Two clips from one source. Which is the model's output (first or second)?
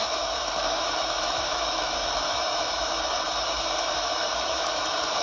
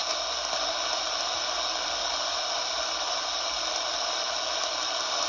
first